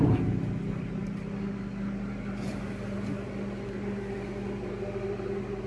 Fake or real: real